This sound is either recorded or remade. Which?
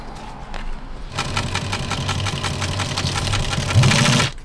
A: recorded